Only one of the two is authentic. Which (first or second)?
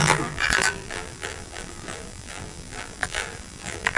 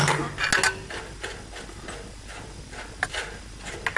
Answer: second